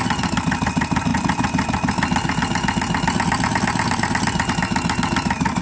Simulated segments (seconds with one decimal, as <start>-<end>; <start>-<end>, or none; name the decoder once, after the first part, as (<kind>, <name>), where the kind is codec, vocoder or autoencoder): none